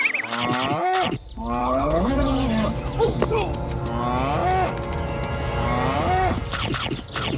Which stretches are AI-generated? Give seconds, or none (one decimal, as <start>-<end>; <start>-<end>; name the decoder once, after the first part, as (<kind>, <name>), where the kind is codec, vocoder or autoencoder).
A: 1.6-2.1 (codec, HILCodec)